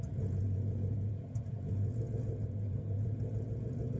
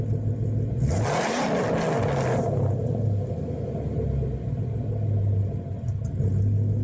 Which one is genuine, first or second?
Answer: second